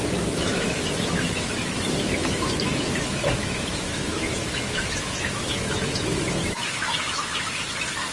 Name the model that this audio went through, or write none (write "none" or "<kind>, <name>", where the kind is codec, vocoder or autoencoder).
autoencoder, DAC-VAE